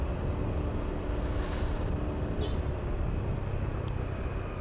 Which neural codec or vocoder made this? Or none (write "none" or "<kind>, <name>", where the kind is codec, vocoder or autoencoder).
none